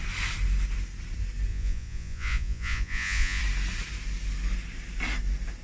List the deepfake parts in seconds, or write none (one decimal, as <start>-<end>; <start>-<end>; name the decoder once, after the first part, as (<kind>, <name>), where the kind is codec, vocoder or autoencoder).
1.5-3.4 (vocoder, Vocos)